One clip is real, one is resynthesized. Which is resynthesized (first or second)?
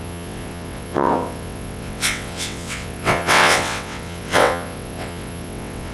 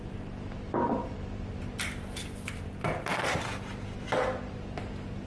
first